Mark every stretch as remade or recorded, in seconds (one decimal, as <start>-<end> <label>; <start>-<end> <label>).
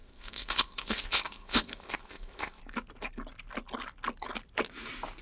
0.0-2.6 remade; 2.6-5.2 recorded